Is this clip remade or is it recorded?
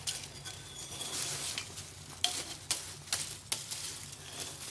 recorded